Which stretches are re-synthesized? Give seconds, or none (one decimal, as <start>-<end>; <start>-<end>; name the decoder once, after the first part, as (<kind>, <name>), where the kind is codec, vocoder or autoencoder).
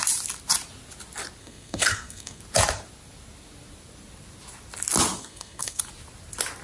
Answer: 1.4-2.4 (codec, SNAC); 5.2-5.8